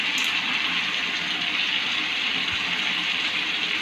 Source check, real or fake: real